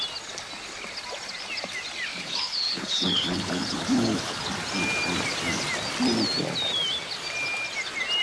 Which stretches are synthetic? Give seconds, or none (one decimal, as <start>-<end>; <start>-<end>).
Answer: 2.1-4.4